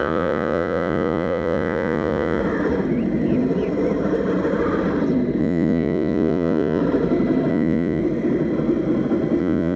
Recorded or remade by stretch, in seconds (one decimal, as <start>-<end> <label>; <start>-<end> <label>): 0.0-2.4 remade; 2.4-5.4 recorded; 5.4-6.8 remade; 6.8-7.5 recorded; 7.5-8.0 remade; 8.0-9.4 recorded; 9.4-9.8 remade